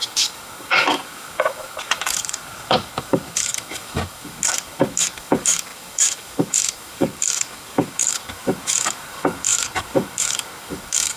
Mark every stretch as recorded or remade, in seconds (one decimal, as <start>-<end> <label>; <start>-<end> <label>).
0.0-11.2 remade